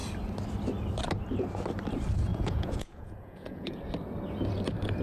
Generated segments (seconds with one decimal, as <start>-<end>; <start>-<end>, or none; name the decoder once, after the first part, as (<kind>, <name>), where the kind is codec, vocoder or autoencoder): 2.3-3.8 (vocoder, Vocos)